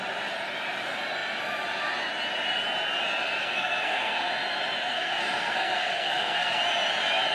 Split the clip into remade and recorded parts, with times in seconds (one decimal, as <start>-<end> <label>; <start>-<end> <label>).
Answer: 0.0-3.4 recorded; 3.4-4.3 remade; 4.3-4.9 recorded; 4.9-6.6 remade; 6.6-7.3 recorded